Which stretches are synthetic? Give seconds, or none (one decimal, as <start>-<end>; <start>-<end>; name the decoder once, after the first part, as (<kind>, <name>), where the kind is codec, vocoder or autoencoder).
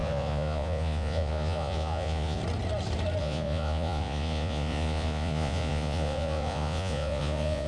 0.0-2.4 (vocoder, Vocos); 3.2-7.7